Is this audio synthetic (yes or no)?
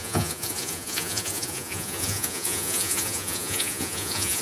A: yes